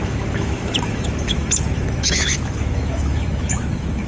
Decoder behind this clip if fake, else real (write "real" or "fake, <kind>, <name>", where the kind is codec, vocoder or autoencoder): fake, autoencoder, DAC-VAE